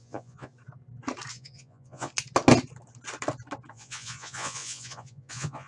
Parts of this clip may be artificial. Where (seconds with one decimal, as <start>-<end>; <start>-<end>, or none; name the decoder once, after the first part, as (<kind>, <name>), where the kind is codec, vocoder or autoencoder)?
0.0-0.5 (vocoder, Vocos); 1.3-2.1; 3.7-5.7